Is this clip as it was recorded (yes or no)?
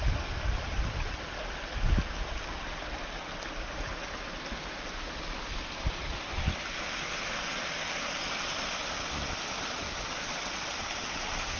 yes